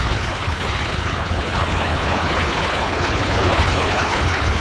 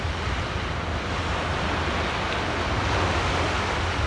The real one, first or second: second